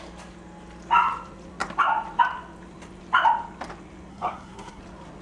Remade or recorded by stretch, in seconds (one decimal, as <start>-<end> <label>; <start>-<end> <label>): 0.0-4.1 recorded; 4.1-4.8 remade; 4.8-5.2 recorded